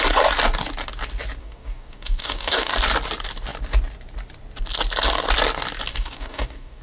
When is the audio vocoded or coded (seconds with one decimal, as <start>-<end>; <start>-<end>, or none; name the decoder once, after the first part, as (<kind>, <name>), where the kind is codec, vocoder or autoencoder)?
1.4-2.7 (codec, DAC); 5.9-6.8